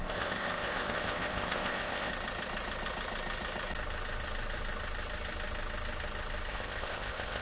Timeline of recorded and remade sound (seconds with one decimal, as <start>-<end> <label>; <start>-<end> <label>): 0.0-2.1 remade; 2.1-6.5 recorded; 6.5-7.4 remade